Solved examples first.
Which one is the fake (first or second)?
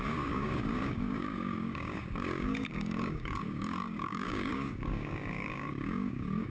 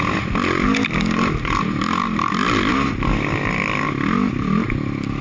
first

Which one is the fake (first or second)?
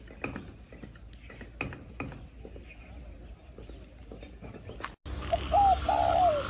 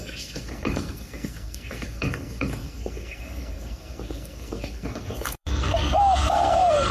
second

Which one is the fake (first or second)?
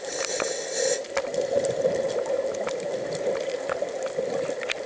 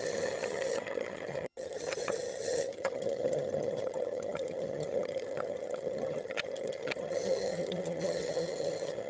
second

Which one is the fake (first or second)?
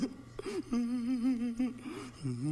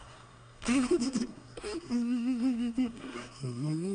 second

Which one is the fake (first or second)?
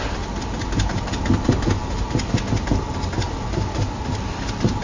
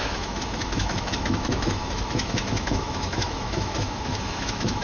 second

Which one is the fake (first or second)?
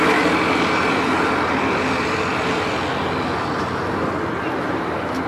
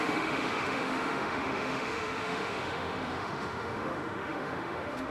second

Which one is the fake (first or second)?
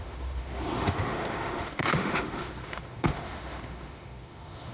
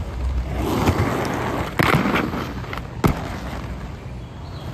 first